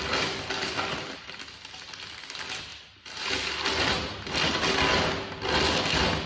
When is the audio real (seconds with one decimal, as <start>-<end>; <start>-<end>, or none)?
0.0-6.3